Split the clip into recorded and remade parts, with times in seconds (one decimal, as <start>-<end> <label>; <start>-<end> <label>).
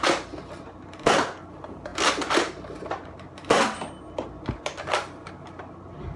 0.0-6.2 recorded